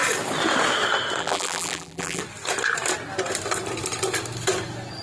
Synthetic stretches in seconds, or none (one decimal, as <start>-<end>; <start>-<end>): 1.2-2.2